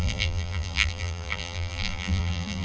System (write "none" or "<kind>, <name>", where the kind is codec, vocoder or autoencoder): vocoder, BigVGAN v2